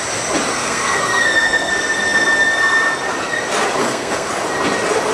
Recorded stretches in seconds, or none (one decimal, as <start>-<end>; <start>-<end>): 0.0-0.5; 1.7-3.8; 4.3-5.1

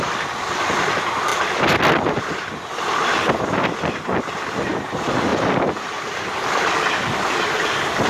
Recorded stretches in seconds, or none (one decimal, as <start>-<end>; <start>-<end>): 0.0-1.3; 2.2-5.3; 6.9-8.1

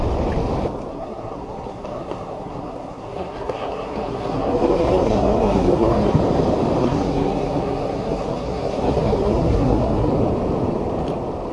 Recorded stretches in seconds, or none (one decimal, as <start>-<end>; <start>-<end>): 0.0-0.9; 6.2-6.8; 10.1-11.5

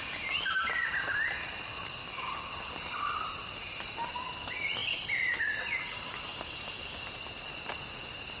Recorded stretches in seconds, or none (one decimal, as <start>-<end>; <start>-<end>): 0.0-2.0; 2.5-8.4

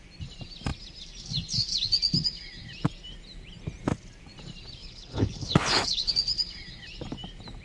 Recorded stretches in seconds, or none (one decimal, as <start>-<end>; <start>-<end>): 0.0-4.8; 6.1-7.6

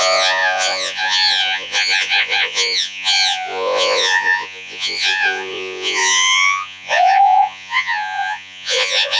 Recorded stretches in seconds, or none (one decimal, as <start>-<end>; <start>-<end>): none